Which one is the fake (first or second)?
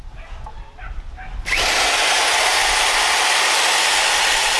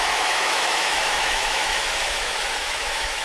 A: second